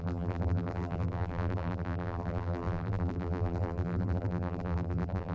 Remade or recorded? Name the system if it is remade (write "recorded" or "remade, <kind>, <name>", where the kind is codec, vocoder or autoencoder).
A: remade, vocoder, BigVGAN v2